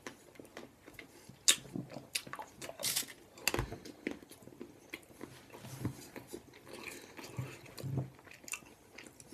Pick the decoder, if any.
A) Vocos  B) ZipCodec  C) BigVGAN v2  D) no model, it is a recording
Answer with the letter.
D